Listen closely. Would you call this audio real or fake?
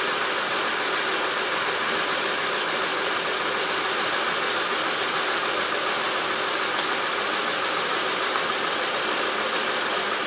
real